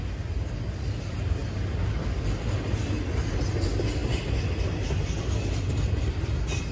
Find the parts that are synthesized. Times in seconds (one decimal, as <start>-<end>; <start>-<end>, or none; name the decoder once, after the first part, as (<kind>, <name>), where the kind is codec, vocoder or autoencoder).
none